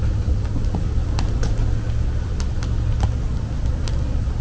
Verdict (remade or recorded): recorded